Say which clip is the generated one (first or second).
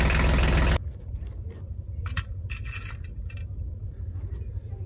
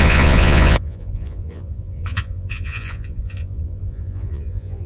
second